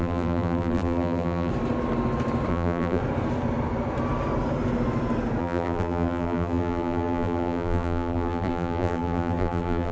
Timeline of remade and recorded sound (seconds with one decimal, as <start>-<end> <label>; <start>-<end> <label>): 0.0-1.5 remade; 1.5-2.5 recorded; 2.5-3.0 remade; 3.0-5.4 recorded; 5.4-9.9 remade